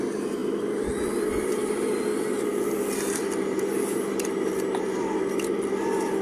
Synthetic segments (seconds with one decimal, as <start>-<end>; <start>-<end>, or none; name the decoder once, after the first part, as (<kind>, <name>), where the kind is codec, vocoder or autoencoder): none